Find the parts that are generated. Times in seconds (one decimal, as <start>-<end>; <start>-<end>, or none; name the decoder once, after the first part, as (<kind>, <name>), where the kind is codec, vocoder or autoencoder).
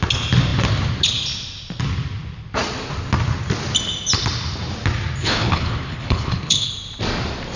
5.2-6.7 (codec, HILCodec)